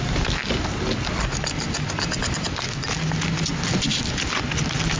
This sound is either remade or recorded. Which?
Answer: recorded